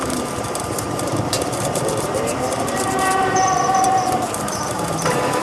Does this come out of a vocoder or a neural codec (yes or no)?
yes